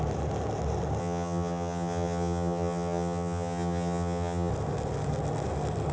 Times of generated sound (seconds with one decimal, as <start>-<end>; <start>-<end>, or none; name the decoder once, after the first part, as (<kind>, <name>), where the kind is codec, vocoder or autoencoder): 1.0-4.5 (vocoder, HiFi-GAN)